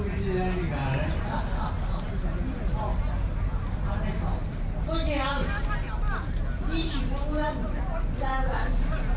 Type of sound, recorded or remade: recorded